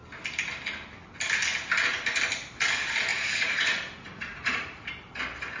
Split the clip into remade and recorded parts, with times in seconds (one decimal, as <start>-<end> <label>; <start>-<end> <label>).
0.0-3.1 recorded; 3.1-5.1 remade; 5.1-5.6 recorded